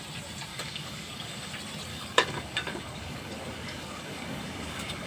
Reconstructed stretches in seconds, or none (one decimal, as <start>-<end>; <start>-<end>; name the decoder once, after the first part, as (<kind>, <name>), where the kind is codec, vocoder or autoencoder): 0.5-1.5 (codec, DAC); 1.9-5.1